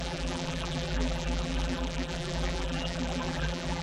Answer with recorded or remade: remade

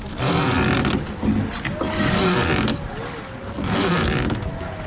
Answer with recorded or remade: recorded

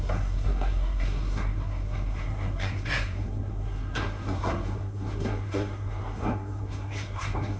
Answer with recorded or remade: remade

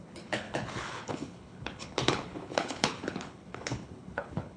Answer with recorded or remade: remade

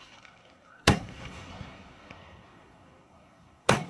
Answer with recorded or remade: remade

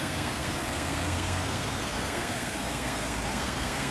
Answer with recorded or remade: remade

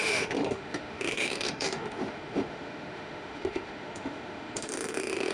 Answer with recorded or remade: remade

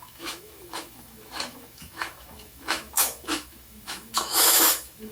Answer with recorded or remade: remade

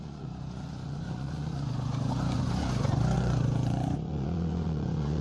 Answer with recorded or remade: remade